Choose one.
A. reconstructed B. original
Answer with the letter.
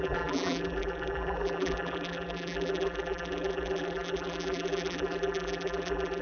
A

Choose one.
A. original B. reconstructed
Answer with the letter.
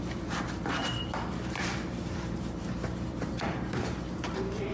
B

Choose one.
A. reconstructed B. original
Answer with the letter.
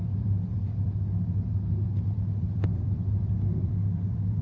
A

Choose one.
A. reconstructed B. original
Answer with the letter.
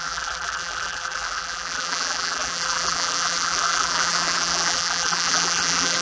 A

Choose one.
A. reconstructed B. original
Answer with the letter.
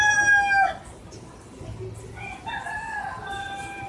B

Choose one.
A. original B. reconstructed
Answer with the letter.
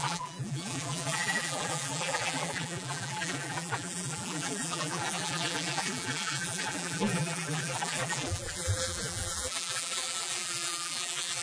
B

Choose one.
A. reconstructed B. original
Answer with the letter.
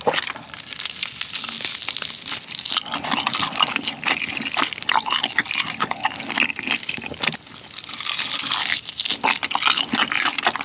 B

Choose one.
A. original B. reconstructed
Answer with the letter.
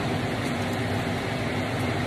A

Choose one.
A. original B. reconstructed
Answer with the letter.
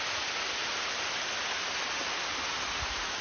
A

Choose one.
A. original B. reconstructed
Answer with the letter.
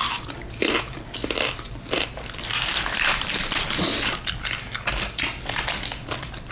B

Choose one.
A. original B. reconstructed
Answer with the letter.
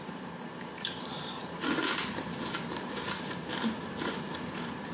B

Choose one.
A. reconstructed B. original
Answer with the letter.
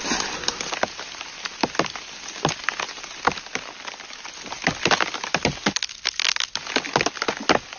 B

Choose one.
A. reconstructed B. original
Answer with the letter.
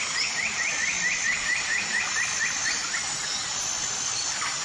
A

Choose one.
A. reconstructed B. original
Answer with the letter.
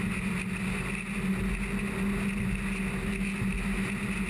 B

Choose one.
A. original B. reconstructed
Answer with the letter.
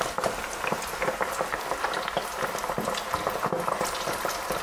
A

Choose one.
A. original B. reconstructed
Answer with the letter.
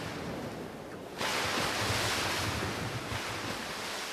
A